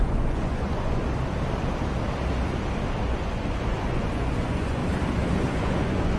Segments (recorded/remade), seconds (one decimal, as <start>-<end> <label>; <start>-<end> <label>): 0.0-1.0 remade; 1.0-3.0 recorded; 3.0-4.8 remade; 4.8-5.5 recorded; 5.5-6.2 remade